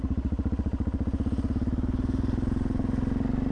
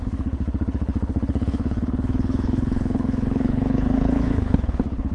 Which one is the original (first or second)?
first